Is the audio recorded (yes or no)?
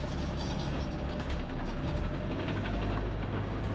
no